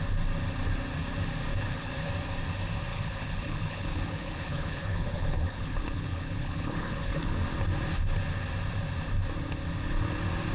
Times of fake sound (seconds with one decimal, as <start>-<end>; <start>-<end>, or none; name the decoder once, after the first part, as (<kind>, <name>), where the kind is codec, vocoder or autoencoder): 1.5-2.1 (codec, HILCodec); 2.9-7.3